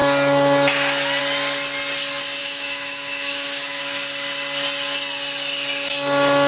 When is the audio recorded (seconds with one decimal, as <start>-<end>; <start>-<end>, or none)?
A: 0.0-2.4; 3.8-6.5